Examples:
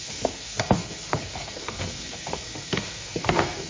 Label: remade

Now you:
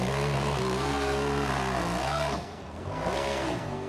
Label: remade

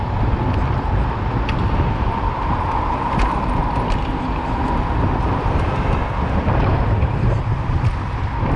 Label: recorded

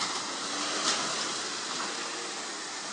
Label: recorded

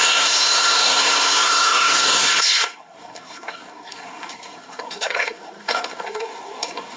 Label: remade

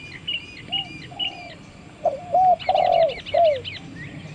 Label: recorded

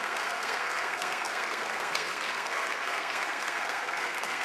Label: remade